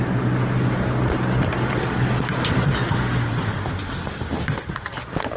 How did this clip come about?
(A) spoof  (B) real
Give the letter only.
B